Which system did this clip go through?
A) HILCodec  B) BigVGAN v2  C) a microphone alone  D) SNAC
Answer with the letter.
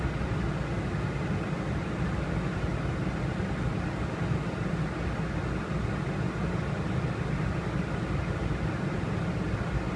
C